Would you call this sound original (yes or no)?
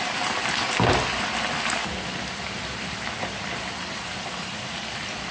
yes